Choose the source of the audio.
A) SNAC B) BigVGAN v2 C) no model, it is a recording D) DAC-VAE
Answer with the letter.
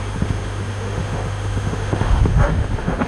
D